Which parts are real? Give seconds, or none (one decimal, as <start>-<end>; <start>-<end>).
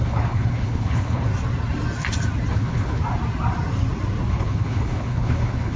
1.3-2.5; 3.0-4.3